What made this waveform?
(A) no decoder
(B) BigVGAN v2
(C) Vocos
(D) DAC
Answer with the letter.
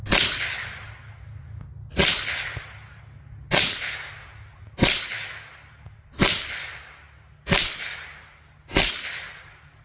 A